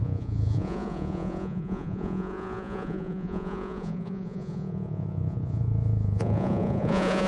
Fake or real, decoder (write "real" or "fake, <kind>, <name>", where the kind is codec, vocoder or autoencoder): fake, vocoder, Vocos